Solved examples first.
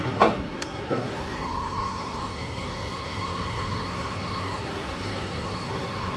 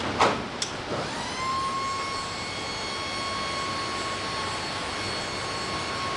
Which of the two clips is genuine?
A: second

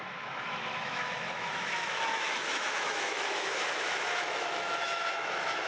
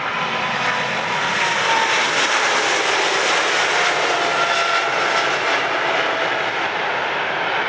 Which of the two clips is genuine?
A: second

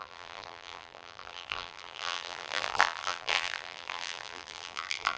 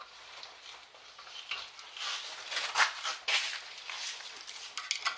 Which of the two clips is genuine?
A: second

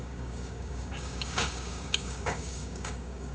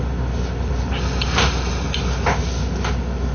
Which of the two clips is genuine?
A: second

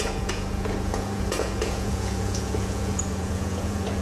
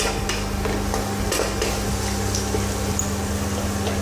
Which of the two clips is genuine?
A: second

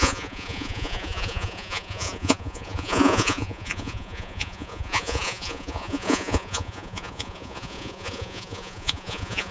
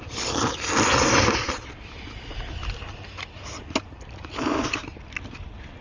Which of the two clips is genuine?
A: second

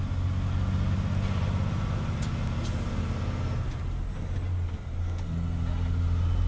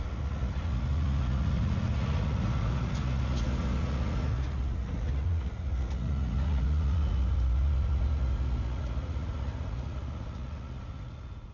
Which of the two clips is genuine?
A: first